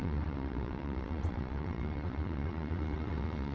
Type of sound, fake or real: fake